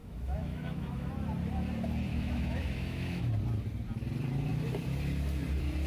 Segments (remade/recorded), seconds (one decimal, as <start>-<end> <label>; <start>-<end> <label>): 0.0-1.1 remade; 1.1-2.1 recorded; 2.1-3.3 remade; 3.3-5.9 recorded